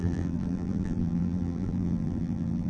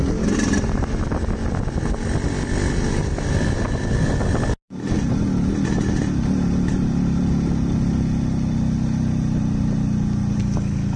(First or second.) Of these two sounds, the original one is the second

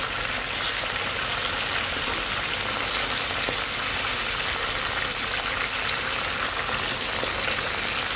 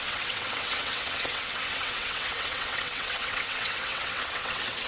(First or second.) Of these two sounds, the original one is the first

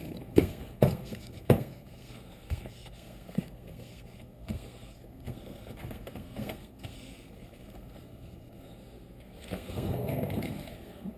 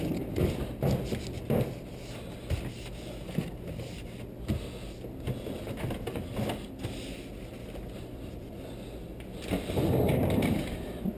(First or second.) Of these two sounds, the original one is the second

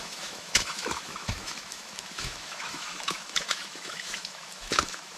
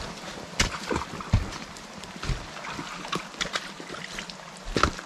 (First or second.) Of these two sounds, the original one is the second